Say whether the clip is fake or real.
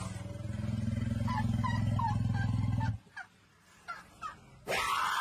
real